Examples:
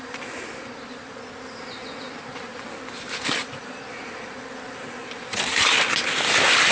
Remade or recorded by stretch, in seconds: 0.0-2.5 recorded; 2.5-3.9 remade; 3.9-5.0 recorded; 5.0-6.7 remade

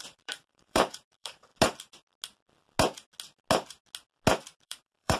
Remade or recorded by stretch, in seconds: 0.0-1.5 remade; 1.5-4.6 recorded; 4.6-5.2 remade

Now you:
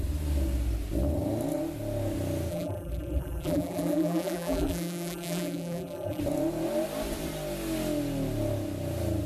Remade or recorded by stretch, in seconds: 0.0-2.5 recorded; 2.5-6.2 remade; 6.2-9.3 recorded

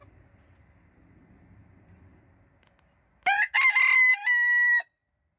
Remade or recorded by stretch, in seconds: 0.0-4.1 recorded; 4.1-5.4 remade

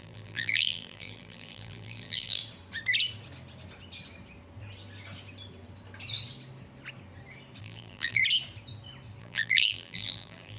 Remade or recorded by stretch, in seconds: 0.0-2.4 remade; 2.4-7.6 recorded; 7.6-8.2 remade; 8.2-9.2 recorded; 9.2-10.6 remade